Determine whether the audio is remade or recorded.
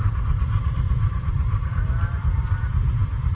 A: remade